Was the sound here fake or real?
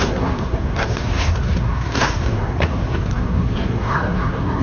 fake